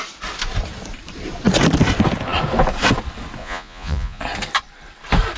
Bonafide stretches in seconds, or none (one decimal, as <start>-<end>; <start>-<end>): 0.0-3.4; 4.2-5.4